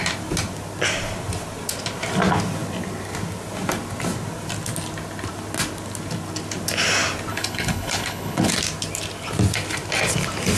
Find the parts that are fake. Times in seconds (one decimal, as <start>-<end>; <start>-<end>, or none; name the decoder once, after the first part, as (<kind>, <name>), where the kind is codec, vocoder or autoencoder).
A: 7.3-8.5 (codec, HILCodec)